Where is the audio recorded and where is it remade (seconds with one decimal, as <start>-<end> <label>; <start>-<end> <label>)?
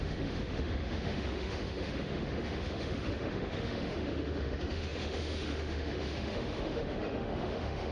0.0-7.9 remade